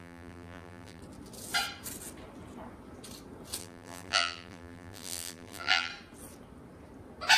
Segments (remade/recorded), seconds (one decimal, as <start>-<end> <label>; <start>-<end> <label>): 0.0-1.0 remade; 1.0-3.6 recorded; 3.6-5.9 remade; 5.9-7.4 recorded